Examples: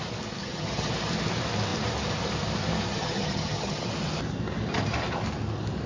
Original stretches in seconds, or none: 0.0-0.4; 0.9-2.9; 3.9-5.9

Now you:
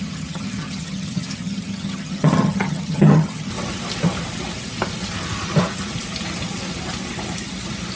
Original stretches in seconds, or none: 3.5-8.0

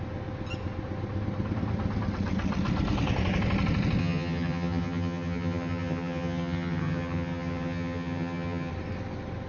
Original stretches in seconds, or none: 0.0-4.0; 8.7-9.5

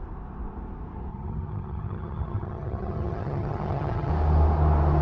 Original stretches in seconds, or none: 0.0-1.1; 4.1-5.0

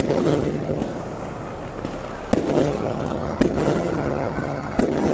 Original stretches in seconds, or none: 0.8-2.5

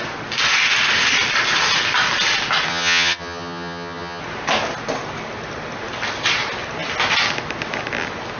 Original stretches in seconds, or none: 0.0-2.7; 4.2-8.4

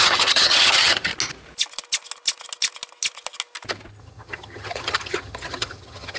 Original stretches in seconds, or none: 1.1-4.0

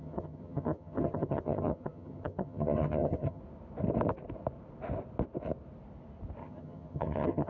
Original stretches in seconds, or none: 3.4-6.4